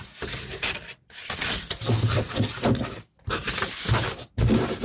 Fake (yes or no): no